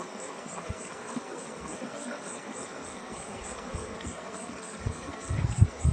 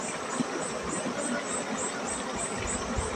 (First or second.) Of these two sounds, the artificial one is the first